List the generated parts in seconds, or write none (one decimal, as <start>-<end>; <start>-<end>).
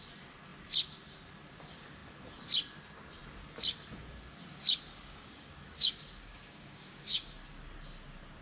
4.9-7.4